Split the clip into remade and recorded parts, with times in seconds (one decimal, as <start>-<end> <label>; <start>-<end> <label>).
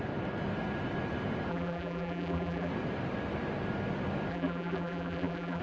0.0-1.5 recorded; 1.5-2.7 remade; 2.7-4.3 recorded; 4.3-5.6 remade